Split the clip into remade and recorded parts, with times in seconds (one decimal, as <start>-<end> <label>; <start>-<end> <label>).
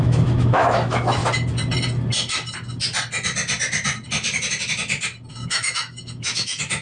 0.0-1.2 remade; 1.2-5.3 recorded; 5.3-6.8 remade